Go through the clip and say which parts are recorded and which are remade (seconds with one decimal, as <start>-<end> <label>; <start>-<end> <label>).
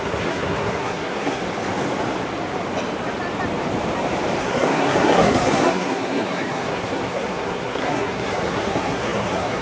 0.0-1.4 remade; 1.4-4.4 recorded; 4.4-9.6 remade